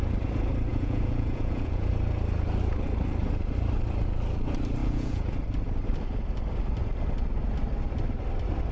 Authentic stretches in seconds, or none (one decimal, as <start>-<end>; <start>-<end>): 0.0-0.7; 1.9-4.8; 5.3-8.7